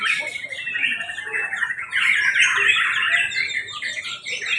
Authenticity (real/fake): real